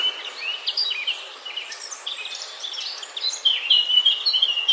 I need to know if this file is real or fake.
real